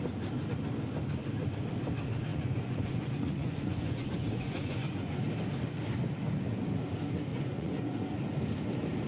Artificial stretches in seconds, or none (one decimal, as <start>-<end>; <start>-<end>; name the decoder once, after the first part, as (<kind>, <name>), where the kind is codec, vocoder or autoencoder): 2.3-5.2 (vocoder, Vocos); 7.3-8.1